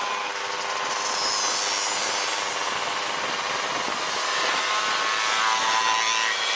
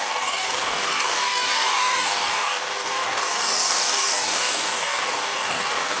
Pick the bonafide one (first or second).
first